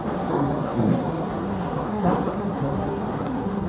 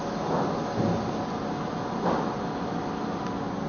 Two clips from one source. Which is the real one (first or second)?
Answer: second